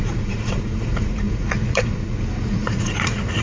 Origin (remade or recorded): remade